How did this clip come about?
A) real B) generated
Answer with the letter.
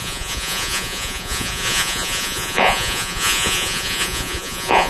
B